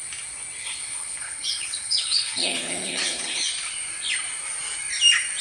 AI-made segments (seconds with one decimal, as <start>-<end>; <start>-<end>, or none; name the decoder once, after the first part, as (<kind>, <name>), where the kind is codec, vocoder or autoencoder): 0.6-3.5 (codec, HILCodec)